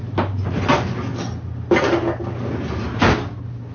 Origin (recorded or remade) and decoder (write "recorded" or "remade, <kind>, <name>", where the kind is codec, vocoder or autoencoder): recorded